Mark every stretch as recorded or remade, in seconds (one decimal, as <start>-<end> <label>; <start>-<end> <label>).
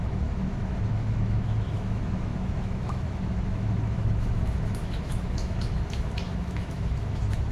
0.0-7.5 remade